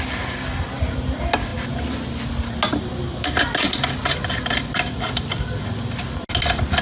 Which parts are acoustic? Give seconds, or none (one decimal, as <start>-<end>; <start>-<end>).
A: 0.0-6.8